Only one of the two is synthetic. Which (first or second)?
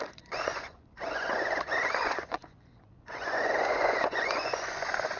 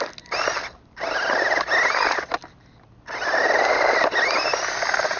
first